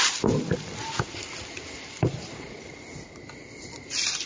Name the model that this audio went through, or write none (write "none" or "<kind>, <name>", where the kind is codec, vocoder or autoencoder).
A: none